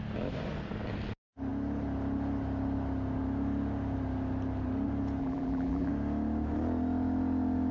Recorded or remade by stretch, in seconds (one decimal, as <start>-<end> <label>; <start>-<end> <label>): 0.0-5.2 recorded; 5.2-5.9 remade; 5.9-7.7 recorded